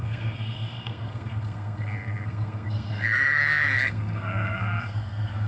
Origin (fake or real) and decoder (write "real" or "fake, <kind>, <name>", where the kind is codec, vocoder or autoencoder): fake, codec, SNAC